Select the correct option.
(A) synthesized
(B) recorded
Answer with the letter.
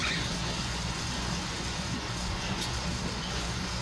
A